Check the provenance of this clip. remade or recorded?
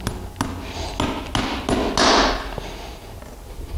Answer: recorded